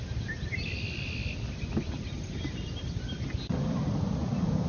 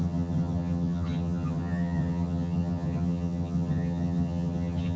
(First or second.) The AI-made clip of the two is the second